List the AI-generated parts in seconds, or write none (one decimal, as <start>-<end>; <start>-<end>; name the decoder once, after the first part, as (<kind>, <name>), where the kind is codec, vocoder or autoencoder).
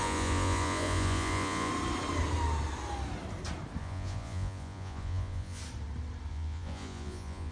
0.0-1.7 (vocoder, Vocos); 3.8-5.6; 6.3-7.5